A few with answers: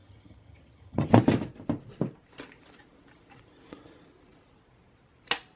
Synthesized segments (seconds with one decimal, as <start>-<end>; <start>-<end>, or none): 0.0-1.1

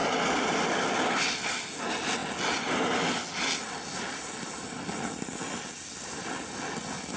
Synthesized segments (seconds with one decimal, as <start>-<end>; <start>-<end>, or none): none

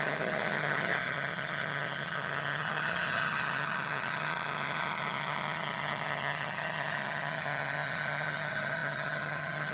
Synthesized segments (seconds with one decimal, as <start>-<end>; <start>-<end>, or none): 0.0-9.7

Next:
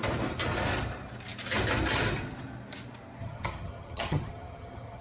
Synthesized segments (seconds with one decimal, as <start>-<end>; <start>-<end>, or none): 3.2-5.0